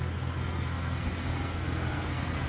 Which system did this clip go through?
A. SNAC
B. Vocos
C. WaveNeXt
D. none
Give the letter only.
A